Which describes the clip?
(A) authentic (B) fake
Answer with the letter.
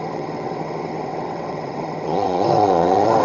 B